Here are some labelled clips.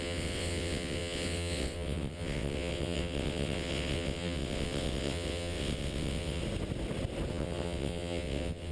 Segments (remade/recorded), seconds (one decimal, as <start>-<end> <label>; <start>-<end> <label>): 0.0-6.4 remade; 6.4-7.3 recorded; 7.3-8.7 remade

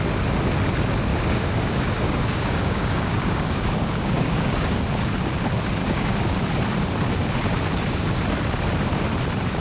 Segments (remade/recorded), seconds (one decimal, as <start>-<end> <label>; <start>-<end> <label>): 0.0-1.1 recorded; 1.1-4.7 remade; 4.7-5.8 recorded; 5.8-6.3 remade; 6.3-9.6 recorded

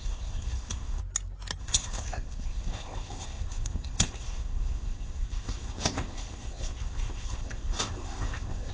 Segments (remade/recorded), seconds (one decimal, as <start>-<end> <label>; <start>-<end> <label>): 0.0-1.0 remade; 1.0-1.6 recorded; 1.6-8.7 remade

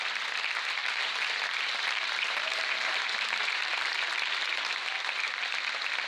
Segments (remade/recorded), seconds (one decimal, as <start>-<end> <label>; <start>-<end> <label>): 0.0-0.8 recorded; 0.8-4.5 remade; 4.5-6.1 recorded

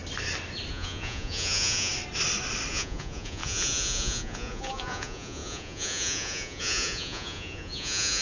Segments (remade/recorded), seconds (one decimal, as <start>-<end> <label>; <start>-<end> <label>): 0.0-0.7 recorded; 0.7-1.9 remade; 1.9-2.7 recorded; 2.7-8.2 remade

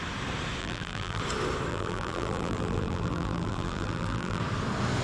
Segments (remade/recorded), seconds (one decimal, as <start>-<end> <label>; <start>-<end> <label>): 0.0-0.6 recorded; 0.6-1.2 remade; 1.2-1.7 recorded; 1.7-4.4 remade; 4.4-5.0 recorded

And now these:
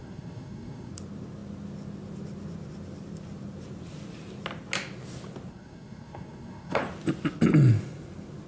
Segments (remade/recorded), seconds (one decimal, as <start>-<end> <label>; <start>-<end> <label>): 0.0-0.9 remade; 0.9-5.5 recorded; 5.5-6.8 remade; 6.8-8.5 recorded